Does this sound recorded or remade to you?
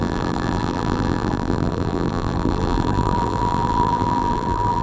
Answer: remade